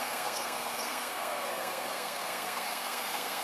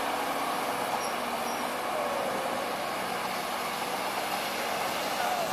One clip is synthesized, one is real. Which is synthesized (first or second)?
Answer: first